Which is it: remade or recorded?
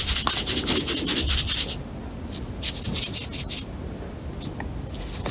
recorded